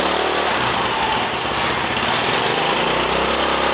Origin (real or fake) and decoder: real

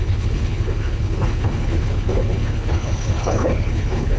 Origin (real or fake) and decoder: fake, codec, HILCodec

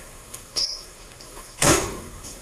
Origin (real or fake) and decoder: fake, codec, SNAC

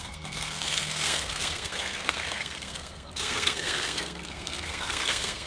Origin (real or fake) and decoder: fake, codec, SNAC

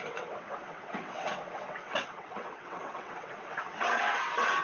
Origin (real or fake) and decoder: fake, vocoder, WaveNeXt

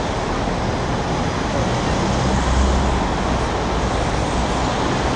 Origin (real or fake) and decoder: real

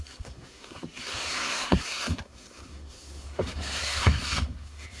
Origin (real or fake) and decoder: fake, codec, SNAC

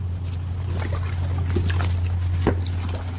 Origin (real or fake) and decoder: real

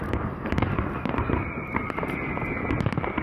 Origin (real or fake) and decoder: fake, vocoder, BigVGAN v2